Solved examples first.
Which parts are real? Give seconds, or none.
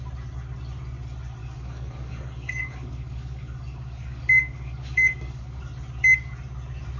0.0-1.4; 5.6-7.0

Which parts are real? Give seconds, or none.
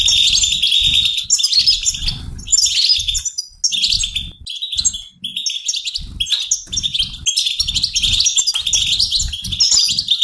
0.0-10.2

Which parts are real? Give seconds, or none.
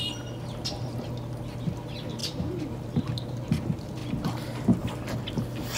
0.0-2.2; 2.9-5.8